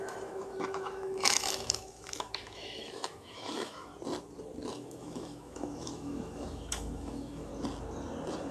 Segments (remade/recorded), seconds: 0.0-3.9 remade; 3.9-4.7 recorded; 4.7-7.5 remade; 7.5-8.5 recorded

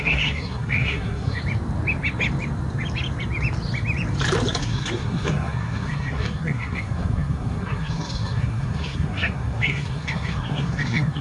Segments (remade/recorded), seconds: 0.0-1.4 remade; 1.4-4.6 recorded; 4.6-11.2 remade

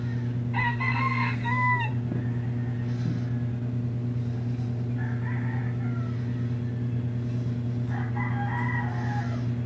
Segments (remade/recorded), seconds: 0.0-0.6 recorded; 0.6-1.9 remade; 1.9-9.7 recorded

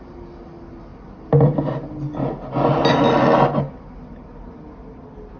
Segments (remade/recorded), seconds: 0.0-5.4 recorded

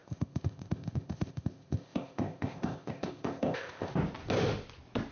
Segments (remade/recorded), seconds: 0.0-3.9 remade; 3.9-5.1 recorded

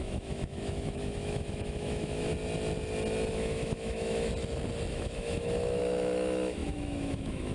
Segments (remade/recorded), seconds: 0.0-2.3 remade; 2.3-3.3 recorded; 3.3-4.3 remade; 4.3-4.9 recorded; 4.9-7.5 remade